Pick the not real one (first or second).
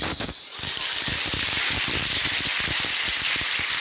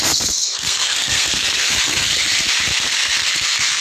second